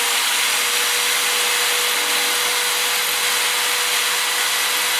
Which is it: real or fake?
real